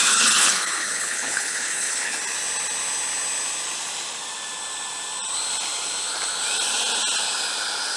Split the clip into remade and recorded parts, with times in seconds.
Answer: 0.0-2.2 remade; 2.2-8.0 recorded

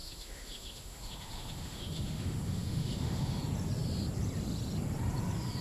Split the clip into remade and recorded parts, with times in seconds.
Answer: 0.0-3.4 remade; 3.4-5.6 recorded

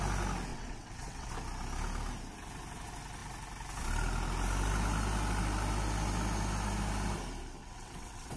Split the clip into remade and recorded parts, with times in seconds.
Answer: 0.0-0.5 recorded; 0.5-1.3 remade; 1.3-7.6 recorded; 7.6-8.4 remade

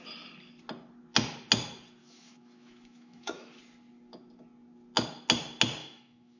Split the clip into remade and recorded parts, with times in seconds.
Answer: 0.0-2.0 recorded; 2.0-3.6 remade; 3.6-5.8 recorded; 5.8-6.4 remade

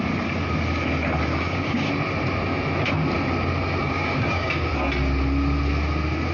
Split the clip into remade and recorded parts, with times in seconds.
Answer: 0.0-1.3 recorded; 1.3-1.9 remade; 1.9-3.8 recorded; 3.8-4.7 remade; 4.7-6.3 recorded

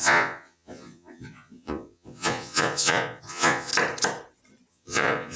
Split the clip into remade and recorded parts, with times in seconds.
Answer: 0.0-3.7 remade; 3.7-4.7 recorded; 4.7-5.4 remade

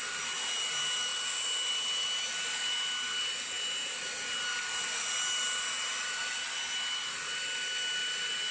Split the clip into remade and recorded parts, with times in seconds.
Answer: 0.0-8.5 recorded